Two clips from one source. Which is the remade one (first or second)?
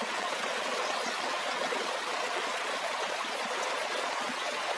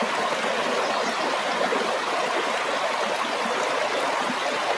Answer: first